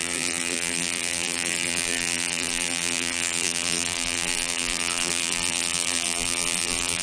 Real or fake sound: fake